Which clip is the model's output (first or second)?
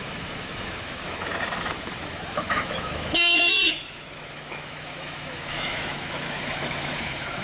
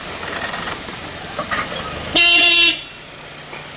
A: first